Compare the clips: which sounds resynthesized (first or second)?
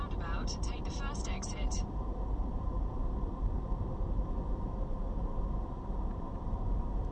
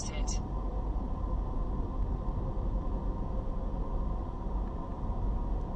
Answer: first